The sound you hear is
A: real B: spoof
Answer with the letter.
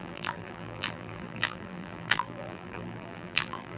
B